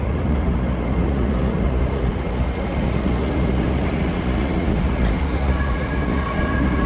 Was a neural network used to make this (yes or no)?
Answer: yes